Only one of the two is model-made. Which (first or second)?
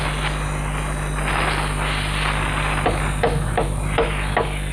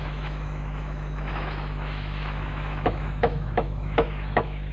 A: second